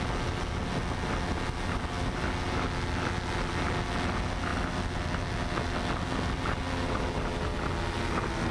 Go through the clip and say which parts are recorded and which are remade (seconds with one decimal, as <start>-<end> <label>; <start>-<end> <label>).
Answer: 0.0-8.5 recorded